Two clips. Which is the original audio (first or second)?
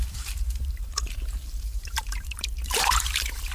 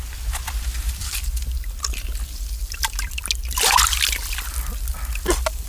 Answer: second